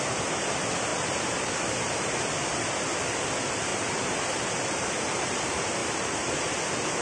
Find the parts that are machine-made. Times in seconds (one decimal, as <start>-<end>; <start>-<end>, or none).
0.9-1.5; 3.7-4.4; 5.8-6.3